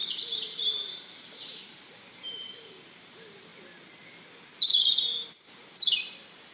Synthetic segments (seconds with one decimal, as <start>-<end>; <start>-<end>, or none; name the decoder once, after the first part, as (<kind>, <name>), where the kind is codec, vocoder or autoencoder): 0.0-3.5 (vocoder, BigVGAN v2); 5.3-6.5